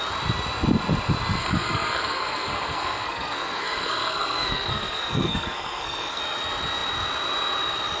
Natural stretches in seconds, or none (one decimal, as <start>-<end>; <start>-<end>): 0.0-1.4; 6.2-8.0